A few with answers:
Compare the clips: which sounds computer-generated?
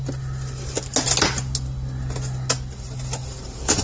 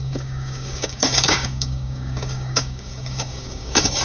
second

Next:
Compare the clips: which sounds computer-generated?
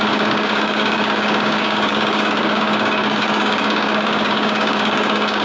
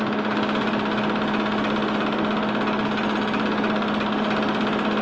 first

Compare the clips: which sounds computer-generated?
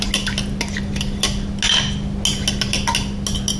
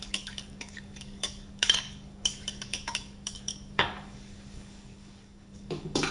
second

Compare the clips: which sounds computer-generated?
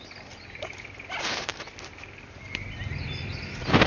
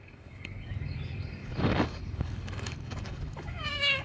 second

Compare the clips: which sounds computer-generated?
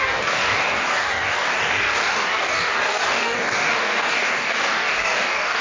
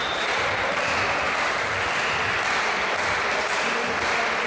first